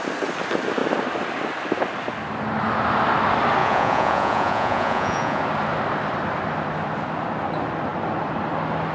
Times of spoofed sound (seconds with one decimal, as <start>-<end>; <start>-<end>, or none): 3.6-5.4